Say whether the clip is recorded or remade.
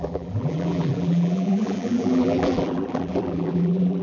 remade